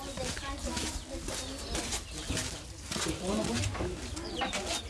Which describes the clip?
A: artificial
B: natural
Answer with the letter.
B